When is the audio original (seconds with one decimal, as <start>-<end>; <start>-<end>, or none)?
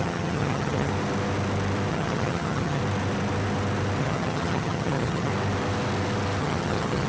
0.9-1.9; 2.8-4.0; 5.3-6.4